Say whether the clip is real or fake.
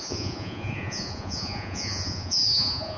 fake